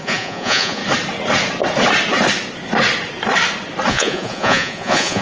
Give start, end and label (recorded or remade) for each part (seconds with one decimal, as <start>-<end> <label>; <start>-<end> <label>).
0.0-0.8 remade; 0.8-3.9 recorded; 3.9-5.2 remade